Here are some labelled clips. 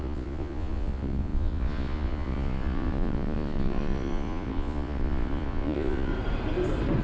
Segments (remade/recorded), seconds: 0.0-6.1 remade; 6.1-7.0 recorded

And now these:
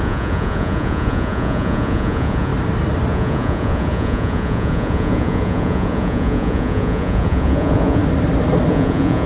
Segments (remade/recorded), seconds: 0.0-2.5 remade; 2.5-3.1 recorded; 3.1-8.0 remade; 8.0-8.7 recorded; 8.7-9.3 remade

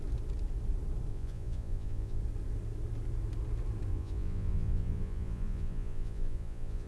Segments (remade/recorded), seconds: 0.0-1.1 recorded; 1.1-2.2 remade; 2.2-3.9 recorded; 3.9-6.9 remade

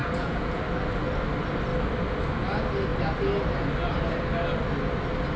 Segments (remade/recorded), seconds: 0.0-0.6 remade; 0.6-5.4 recorded

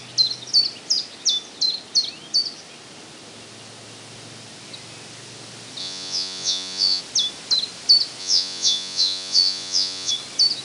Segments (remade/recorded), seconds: 0.0-5.8 recorded; 5.8-7.0 remade; 7.0-8.2 recorded; 8.2-10.1 remade; 10.1-10.6 recorded

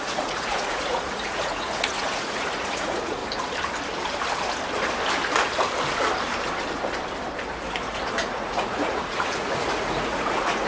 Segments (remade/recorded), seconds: 0.0-3.2 remade; 3.2-8.3 recorded; 8.3-10.7 remade